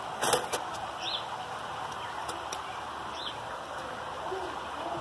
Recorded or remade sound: recorded